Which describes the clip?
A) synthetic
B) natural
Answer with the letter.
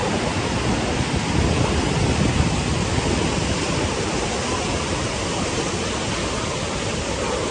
B